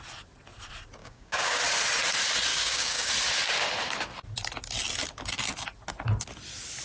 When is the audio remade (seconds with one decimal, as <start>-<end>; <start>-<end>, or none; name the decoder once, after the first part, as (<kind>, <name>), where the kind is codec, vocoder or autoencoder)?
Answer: 1.0-1.6 (codec, DAC); 2.5-3.1